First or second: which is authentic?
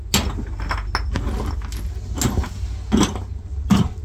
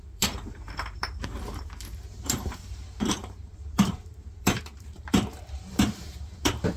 first